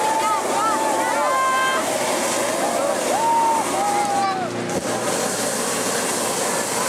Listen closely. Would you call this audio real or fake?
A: real